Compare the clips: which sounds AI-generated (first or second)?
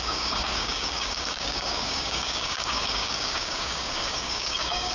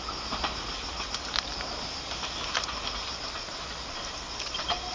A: first